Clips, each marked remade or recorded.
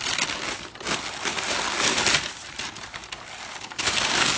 recorded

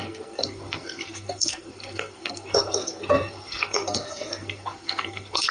remade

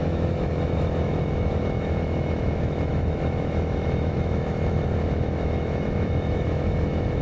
remade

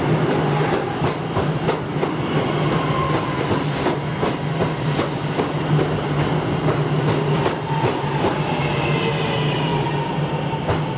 recorded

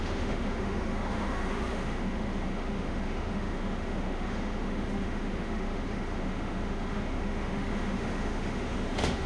remade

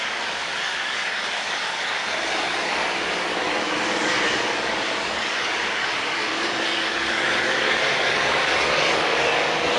remade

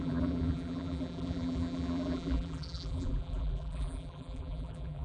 remade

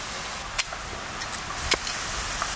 recorded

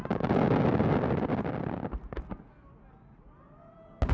recorded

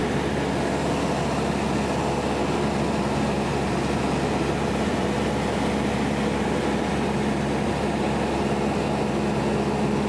recorded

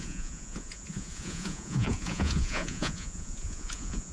remade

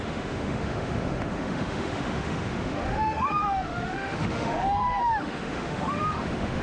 remade